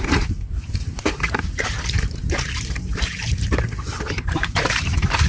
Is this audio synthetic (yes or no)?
yes